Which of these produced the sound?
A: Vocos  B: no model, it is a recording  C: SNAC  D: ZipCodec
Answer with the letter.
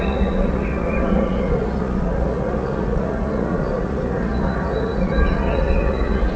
A